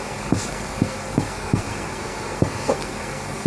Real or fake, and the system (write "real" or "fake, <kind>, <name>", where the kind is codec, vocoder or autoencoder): fake, codec, SNAC